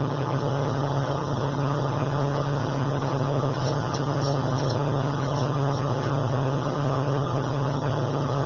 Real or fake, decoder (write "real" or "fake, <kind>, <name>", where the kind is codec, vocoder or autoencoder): fake, vocoder, HiFi-GAN